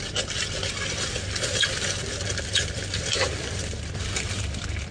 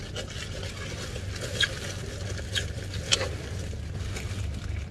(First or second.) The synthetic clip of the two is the first